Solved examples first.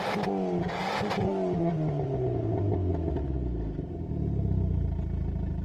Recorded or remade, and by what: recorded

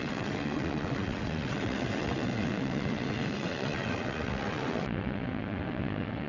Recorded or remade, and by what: remade, vocoder, WaveNeXt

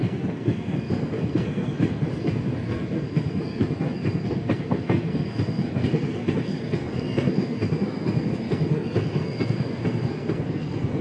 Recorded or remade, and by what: remade, codec, SNAC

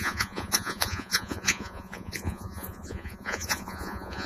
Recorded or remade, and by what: remade, vocoder, Vocos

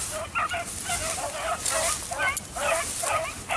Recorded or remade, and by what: recorded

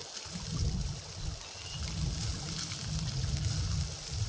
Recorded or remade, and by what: recorded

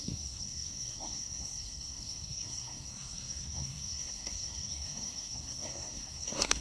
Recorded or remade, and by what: remade, codec, SNAC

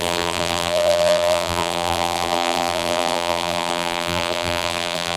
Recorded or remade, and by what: remade, vocoder, BigVGAN v2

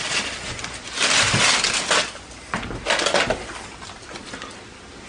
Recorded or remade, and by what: recorded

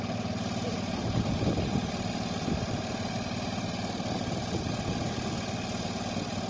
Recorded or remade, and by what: recorded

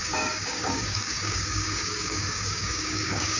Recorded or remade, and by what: remade, codec, DAC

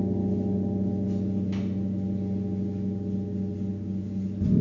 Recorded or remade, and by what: recorded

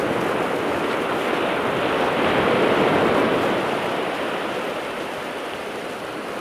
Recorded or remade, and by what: recorded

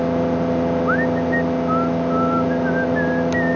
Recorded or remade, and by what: recorded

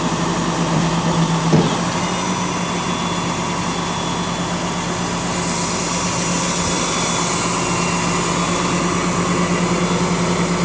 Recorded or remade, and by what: recorded